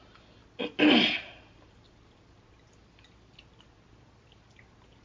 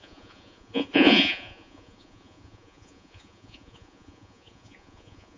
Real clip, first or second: first